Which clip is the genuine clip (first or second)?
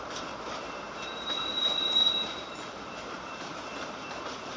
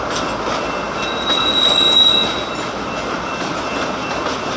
second